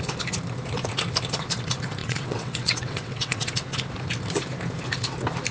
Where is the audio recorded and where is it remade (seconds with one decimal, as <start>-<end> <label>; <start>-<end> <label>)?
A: 0.0-2.0 recorded; 2.0-3.5 remade; 3.5-5.5 recorded